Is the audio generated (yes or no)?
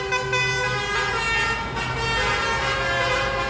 no